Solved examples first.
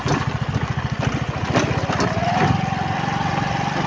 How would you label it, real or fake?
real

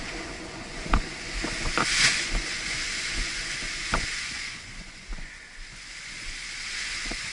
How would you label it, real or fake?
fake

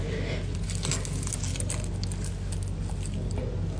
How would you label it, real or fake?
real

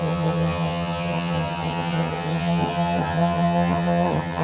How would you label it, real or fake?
fake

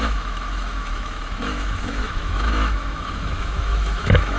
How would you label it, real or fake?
fake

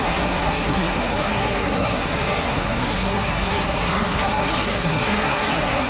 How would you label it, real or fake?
fake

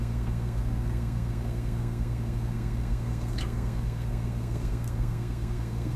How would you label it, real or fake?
fake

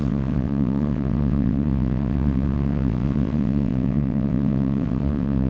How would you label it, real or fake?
fake